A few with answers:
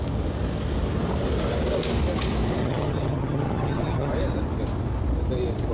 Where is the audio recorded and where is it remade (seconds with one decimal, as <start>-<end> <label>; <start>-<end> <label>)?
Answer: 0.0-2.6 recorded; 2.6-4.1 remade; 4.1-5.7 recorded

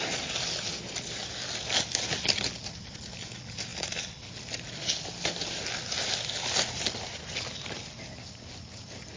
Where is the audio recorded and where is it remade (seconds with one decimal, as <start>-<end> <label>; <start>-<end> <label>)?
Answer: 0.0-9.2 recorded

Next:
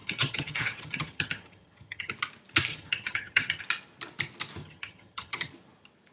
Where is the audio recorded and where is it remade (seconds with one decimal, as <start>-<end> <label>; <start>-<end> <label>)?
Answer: 0.0-2.1 remade; 2.1-2.7 recorded; 2.7-3.6 remade; 3.6-4.6 recorded; 4.6-5.5 remade; 5.5-6.1 recorded

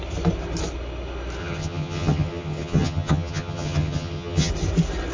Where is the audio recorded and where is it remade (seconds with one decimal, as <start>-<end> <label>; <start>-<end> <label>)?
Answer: 0.0-1.4 recorded; 1.4-4.5 remade; 4.5-5.1 recorded

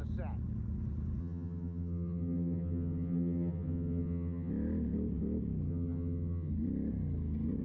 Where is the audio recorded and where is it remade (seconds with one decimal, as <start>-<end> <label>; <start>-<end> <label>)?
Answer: 0.0-1.2 recorded; 1.2-4.5 remade; 4.5-5.7 recorded; 5.7-6.5 remade; 6.5-7.6 recorded

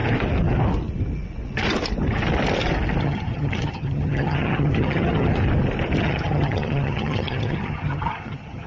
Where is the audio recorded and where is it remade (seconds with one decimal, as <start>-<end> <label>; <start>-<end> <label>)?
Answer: 0.0-3.0 recorded; 3.0-5.3 remade; 5.3-6.0 recorded; 6.0-8.7 remade